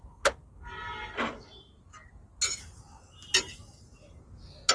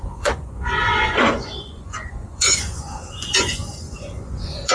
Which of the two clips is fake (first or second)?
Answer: second